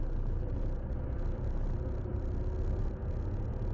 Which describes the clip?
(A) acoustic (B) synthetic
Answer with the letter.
A